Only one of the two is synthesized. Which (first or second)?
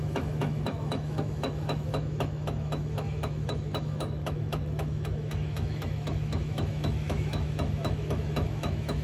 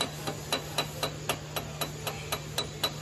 first